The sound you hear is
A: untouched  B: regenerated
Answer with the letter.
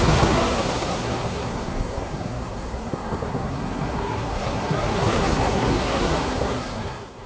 B